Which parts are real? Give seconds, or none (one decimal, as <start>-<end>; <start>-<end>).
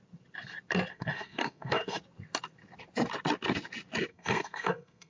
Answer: 0.0-0.9; 2.0-4.1